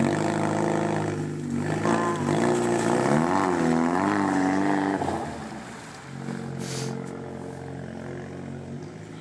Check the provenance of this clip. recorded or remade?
recorded